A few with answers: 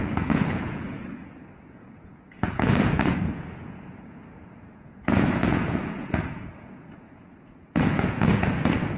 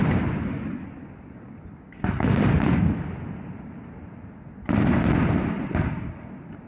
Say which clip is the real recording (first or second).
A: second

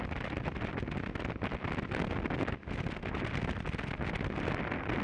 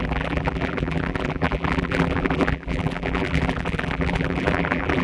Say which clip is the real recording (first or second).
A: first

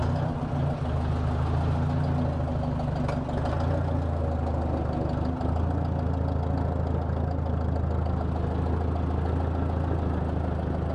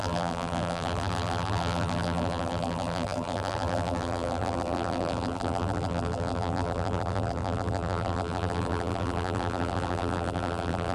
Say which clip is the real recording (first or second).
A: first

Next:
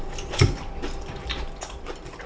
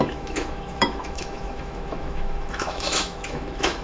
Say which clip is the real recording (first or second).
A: first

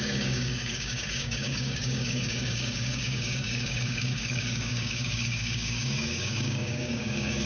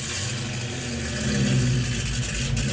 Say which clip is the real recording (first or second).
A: second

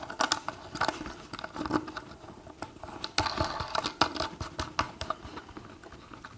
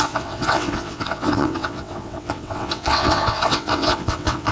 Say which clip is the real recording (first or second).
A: first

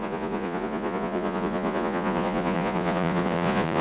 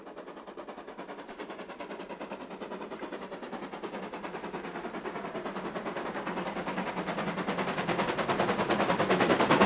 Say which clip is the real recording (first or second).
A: second